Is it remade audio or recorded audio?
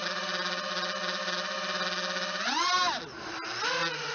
recorded